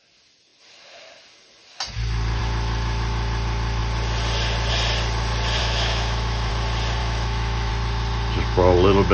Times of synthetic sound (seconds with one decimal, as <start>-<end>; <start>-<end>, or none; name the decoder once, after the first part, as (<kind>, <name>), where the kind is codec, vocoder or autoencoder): 5.6-6.5 (autoencoder, DAC-VAE); 7.0-7.7